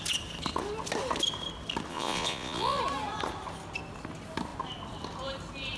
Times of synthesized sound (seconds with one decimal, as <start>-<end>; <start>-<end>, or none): 1.9-2.8